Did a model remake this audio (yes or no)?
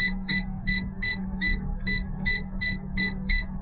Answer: yes